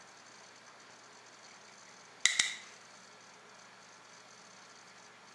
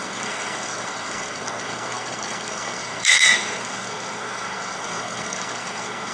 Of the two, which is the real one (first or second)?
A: first